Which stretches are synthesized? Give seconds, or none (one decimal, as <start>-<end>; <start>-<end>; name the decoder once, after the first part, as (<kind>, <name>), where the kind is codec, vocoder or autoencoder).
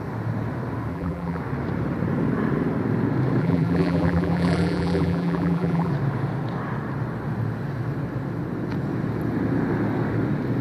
0.9-1.4 (vocoder, BigVGAN v2); 3.4-5.9